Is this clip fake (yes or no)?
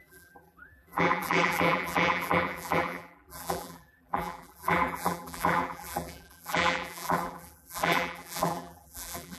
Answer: yes